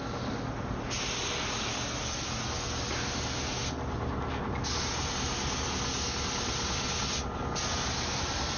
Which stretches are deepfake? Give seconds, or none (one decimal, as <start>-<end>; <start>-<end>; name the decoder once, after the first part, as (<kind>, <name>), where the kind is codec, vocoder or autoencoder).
none